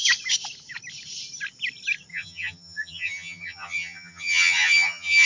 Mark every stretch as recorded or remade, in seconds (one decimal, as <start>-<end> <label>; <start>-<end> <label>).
0.0-2.1 recorded; 2.1-5.3 remade